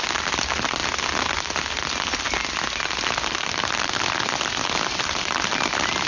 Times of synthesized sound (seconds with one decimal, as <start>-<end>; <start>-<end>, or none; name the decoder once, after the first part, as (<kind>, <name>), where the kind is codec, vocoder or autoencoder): none